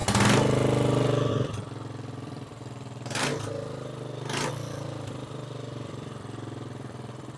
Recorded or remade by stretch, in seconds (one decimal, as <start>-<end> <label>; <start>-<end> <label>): 0.0-1.3 recorded; 1.3-3.3 remade; 3.3-4.5 recorded; 4.5-7.4 remade

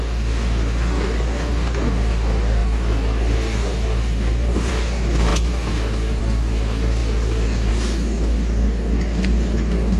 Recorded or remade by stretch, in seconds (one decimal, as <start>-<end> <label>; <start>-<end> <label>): 0.0-10.0 remade